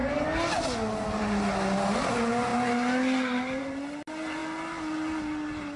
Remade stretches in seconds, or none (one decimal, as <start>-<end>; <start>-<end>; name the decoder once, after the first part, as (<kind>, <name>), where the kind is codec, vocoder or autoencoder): none